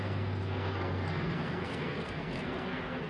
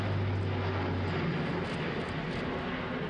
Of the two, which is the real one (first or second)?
second